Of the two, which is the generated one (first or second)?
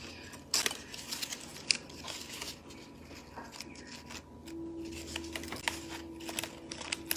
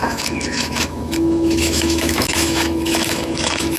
second